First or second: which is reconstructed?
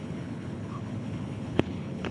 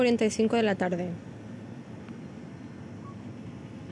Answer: first